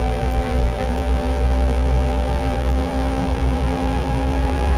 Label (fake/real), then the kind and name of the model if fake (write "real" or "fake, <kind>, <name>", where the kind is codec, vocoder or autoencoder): fake, vocoder, BigVGAN v2